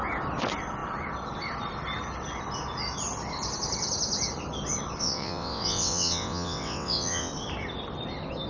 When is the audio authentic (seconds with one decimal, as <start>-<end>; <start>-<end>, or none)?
0.0-5.0; 7.3-8.5